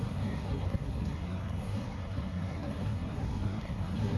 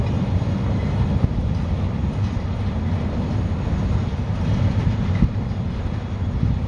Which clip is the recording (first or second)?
second